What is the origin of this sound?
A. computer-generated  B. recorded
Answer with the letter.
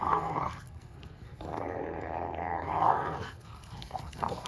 A